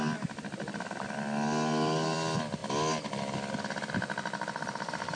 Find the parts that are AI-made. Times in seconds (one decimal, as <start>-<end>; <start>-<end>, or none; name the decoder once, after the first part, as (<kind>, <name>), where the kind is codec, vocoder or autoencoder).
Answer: none